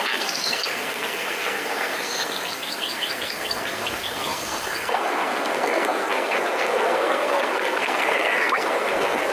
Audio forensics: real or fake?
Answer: fake